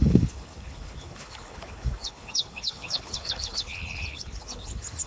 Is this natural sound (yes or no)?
no